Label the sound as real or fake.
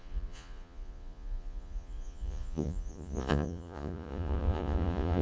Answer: fake